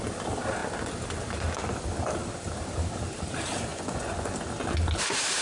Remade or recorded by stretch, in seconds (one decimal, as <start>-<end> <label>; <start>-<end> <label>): 0.0-3.7 recorded; 3.7-4.3 remade; 4.3-5.4 recorded